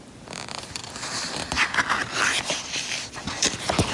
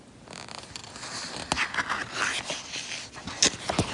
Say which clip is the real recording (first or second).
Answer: second